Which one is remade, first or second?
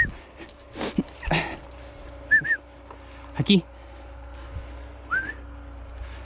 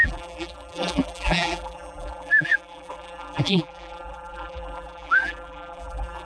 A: second